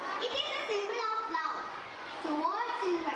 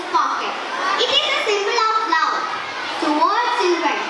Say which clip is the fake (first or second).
first